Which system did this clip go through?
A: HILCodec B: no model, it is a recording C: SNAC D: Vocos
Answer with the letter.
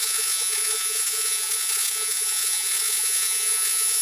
D